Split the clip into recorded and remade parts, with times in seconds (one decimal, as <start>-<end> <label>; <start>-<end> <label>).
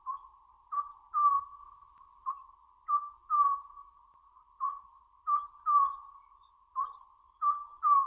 0.0-3.8 recorded; 3.8-5.4 remade; 5.4-8.1 recorded